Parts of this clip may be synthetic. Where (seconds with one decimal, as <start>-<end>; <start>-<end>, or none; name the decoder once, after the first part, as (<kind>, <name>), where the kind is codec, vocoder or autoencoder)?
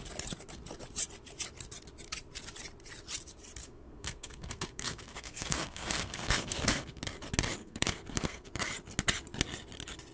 3.6-7.0 (codec, SNAC); 7.6-8.5